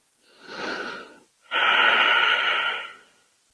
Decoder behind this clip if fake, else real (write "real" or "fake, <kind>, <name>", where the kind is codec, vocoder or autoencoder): real